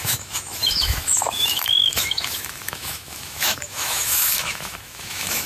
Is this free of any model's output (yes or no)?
no